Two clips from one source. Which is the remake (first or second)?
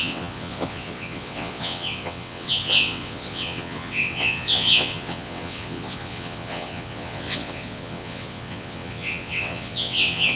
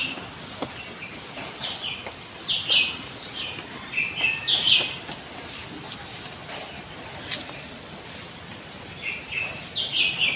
first